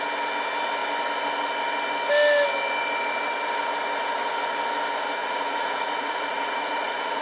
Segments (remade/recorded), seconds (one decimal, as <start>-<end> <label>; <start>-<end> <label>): 0.0-5.2 recorded; 5.2-7.2 remade